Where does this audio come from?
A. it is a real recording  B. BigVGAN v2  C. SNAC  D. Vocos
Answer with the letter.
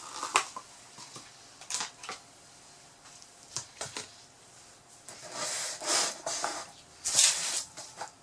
A